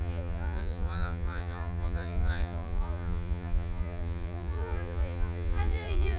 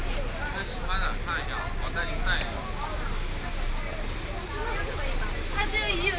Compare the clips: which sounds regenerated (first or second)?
first